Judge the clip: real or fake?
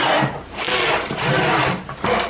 real